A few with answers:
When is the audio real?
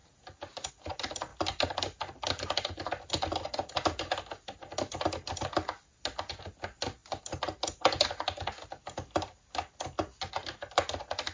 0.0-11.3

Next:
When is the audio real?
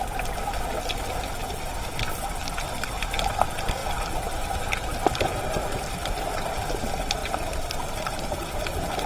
0.0-7.2; 8.2-9.1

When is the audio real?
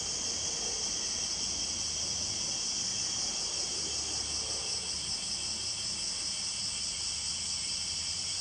0.0-8.4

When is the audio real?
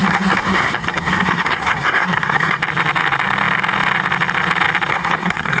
2.6-4.9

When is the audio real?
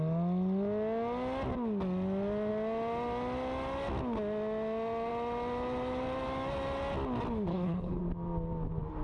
0.0-7.5; 8.0-9.0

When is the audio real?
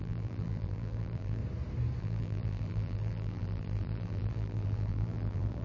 1.4-2.0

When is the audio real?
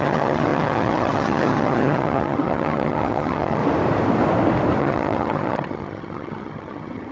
3.6-4.8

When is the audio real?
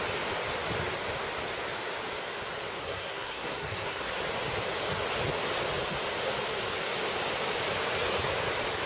0.0-2.8; 4.1-8.9